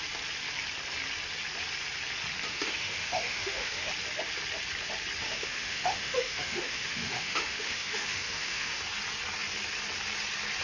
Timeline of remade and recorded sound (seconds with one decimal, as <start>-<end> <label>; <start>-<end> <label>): 0.0-2.5 recorded; 2.5-3.9 remade; 3.9-5.2 recorded; 5.2-8.8 remade; 8.8-10.6 recorded